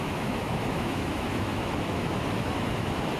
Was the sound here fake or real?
fake